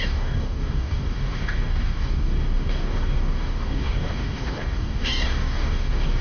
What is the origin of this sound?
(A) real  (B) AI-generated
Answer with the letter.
B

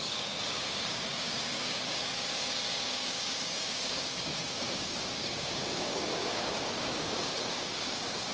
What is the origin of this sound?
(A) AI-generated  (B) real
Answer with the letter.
A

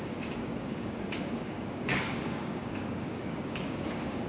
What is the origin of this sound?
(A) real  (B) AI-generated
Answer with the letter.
B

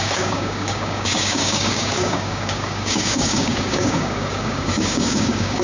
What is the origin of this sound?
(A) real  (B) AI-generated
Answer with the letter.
B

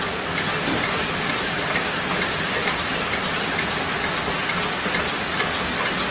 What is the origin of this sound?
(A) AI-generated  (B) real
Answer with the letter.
B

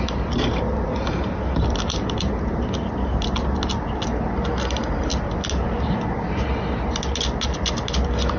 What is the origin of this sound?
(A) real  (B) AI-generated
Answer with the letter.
A